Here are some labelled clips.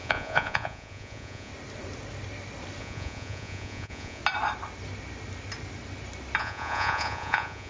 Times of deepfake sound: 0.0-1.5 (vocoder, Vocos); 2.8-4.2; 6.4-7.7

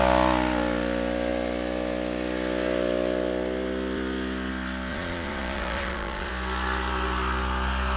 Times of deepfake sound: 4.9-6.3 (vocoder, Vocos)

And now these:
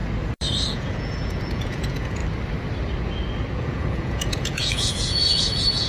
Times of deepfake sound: 0.7-2.2 (vocoder, Vocos); 3.6-5.9

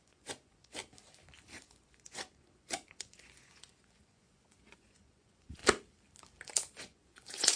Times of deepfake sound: 0.0-0.8 (vocoder, Vocos); 1.6-5.6; 6.8-7.6

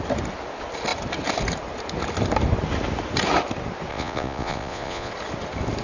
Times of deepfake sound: 3.9-5.1 (vocoder, Vocos)

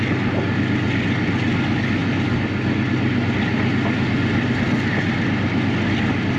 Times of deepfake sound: none

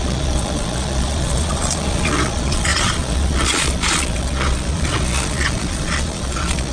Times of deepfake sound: 0.0-6.7 (vocoder, Vocos)